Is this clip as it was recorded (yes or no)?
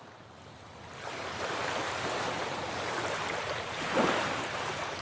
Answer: yes